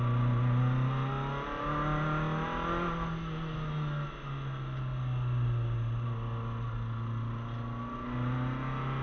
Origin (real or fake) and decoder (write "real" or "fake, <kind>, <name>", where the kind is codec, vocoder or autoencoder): real